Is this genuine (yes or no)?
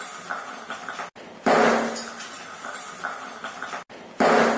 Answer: yes